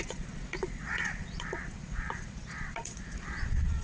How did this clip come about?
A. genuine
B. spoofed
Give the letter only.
B